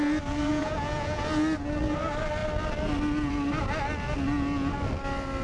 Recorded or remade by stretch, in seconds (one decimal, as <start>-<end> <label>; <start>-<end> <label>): 0.0-0.5 recorded; 0.5-1.2 remade; 1.2-5.4 recorded